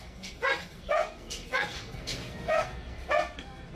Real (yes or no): no